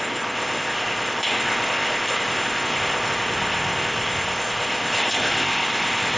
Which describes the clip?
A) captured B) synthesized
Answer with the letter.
B